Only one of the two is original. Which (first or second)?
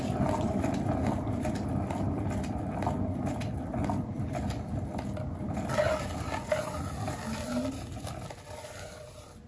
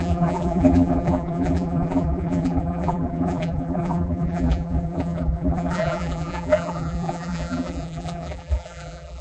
first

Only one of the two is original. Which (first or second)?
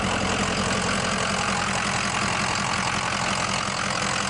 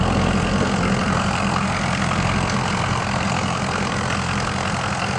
first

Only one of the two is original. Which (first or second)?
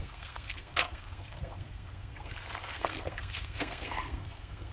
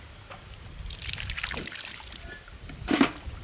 second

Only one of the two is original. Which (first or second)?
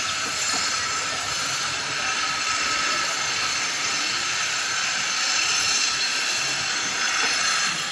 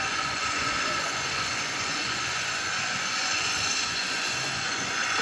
first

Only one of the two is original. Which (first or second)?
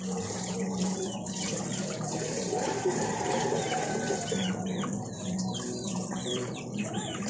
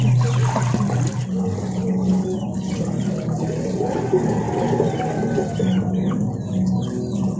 second